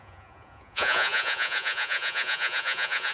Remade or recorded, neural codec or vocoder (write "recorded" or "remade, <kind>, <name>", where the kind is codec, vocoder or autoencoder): remade, vocoder, Vocos